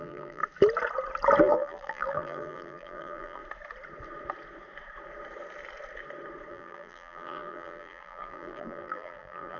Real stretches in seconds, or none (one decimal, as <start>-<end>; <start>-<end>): 0.4-1.4; 3.4-6.5